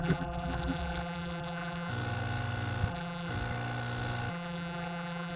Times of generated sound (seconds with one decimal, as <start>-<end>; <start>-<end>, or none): 0.0-1.9; 2.9-3.3; 4.3-5.4